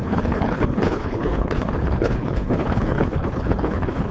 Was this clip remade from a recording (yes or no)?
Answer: yes